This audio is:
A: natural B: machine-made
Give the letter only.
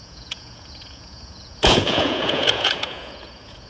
B